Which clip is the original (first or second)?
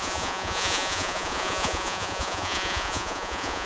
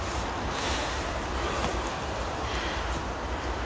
second